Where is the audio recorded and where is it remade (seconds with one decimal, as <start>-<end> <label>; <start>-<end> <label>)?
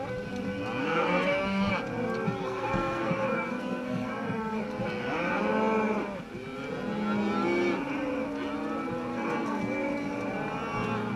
0.0-0.8 recorded; 0.8-1.7 remade; 1.7-2.4 recorded; 2.4-4.6 remade; 4.6-9.1 recorded; 9.1-9.6 remade; 9.6-11.2 recorded